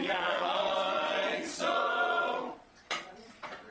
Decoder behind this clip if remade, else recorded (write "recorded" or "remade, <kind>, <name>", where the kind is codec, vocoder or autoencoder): remade, vocoder, Vocos